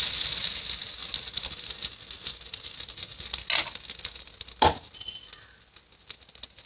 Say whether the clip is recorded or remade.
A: recorded